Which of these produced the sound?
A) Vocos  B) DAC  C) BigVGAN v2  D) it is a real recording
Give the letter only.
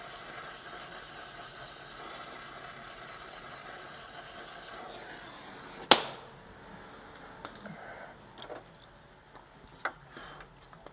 D